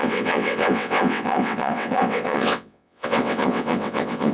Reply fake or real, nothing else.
fake